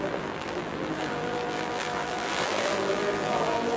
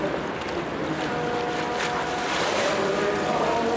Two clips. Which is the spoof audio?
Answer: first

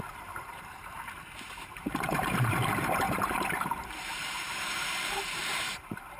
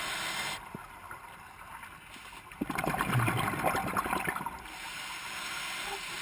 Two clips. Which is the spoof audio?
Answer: first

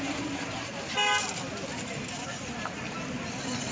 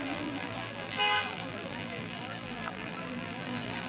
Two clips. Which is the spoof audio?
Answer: second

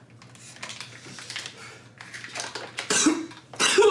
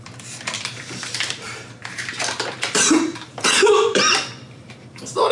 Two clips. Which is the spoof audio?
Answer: second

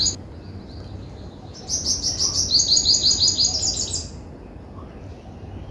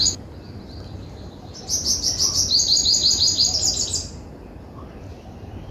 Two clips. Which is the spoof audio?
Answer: second